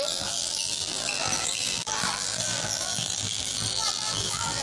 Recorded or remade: remade